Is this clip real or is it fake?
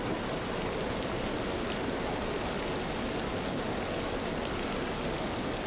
real